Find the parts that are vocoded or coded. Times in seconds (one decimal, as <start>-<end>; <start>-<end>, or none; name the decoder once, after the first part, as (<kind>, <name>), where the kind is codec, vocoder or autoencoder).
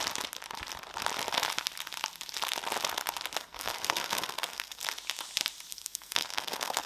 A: 3.4-4.8 (codec, SNAC); 5.7-6.9